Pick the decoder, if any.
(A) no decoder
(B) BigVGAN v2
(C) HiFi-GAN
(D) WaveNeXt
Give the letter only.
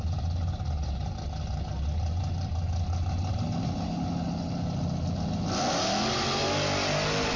A